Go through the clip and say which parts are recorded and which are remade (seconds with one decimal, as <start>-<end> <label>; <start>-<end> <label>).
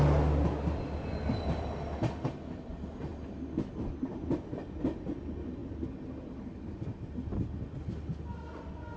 0.0-9.0 recorded